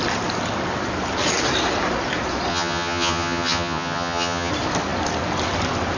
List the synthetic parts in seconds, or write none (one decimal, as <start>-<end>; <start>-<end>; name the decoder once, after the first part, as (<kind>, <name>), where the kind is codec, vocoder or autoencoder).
2.5-4.5 (vocoder, HiFi-GAN)